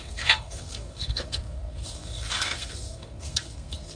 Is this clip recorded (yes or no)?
no